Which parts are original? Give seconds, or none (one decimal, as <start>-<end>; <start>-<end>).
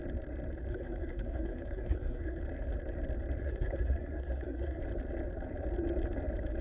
0.0-0.7; 2.4-3.4; 4.8-6.6